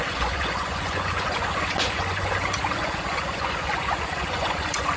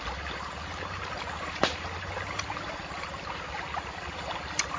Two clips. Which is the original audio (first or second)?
second